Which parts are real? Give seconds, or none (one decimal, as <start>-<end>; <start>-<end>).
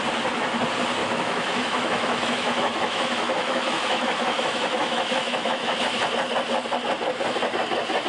0.0-1.0; 5.8-8.1